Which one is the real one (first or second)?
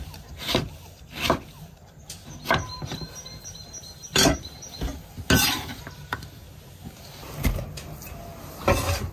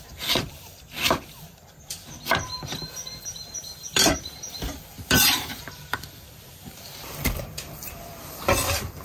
first